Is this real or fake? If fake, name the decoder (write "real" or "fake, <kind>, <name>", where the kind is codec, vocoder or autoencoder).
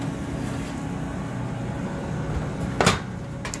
real